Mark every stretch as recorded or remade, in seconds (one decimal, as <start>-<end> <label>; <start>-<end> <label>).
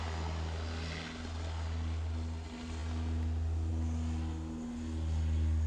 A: 0.0-5.7 recorded